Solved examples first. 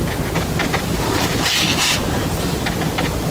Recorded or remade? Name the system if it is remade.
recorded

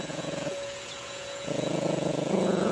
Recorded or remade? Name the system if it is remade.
remade, vocoder, Vocos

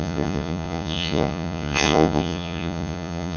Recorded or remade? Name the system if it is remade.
remade, vocoder, Vocos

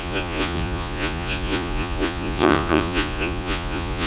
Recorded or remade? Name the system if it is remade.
remade, vocoder, Vocos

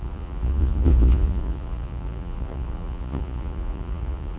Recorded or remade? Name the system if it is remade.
remade, vocoder, Vocos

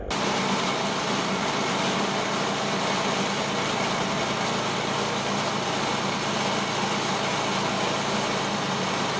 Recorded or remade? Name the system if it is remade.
recorded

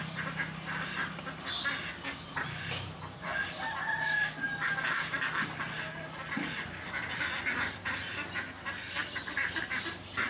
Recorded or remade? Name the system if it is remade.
recorded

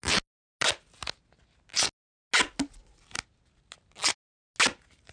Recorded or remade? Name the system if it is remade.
recorded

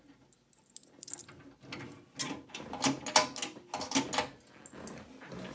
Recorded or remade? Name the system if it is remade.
recorded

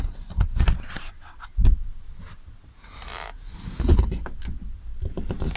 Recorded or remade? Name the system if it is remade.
recorded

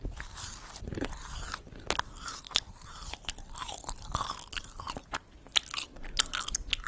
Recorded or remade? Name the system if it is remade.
recorded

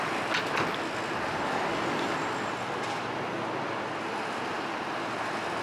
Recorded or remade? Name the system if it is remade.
recorded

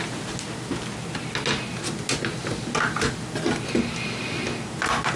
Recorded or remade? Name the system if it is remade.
recorded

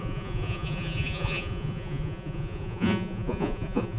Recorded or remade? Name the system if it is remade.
remade, vocoder, Vocos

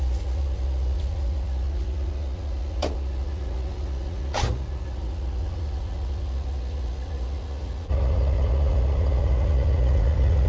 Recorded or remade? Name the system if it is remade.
remade, vocoder, Vocos